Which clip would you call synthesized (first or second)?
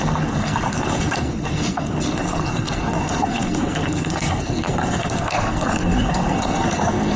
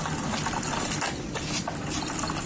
first